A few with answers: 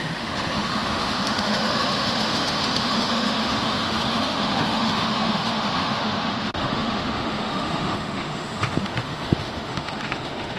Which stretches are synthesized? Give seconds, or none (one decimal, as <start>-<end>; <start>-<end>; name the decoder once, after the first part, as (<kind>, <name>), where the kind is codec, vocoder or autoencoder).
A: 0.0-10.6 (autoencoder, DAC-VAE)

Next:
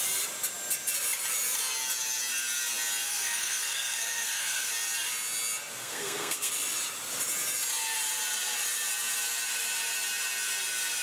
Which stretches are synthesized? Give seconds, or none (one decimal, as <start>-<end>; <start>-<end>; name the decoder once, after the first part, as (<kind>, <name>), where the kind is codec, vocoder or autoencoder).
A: 3.1-4.7 (codec, SNAC); 5.8-6.5

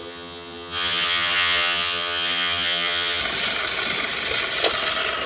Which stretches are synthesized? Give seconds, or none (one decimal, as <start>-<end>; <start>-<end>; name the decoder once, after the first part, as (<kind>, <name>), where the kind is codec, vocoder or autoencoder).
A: 0.0-3.2 (vocoder, HiFi-GAN)

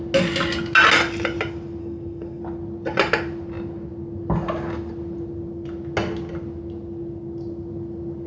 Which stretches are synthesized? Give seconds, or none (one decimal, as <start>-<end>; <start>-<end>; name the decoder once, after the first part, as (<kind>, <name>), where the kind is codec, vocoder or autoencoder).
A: 1.8-2.4 (codec, SNAC)

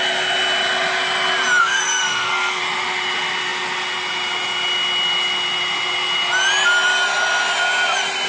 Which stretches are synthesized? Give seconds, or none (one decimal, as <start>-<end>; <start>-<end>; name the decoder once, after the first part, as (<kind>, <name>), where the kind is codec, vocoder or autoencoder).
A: 1.6-2.6 (codec, SNAC)